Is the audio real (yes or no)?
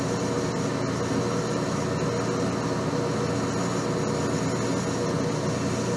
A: yes